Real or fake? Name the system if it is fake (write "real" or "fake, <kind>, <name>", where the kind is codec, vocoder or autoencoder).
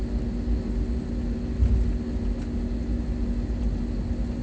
real